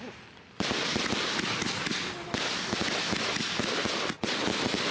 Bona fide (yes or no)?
yes